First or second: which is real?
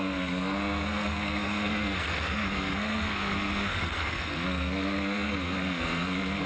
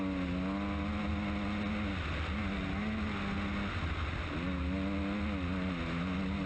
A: second